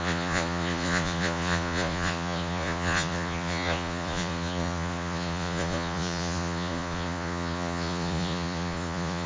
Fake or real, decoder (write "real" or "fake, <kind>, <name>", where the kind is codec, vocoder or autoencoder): fake, vocoder, Vocos